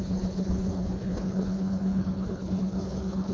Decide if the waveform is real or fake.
fake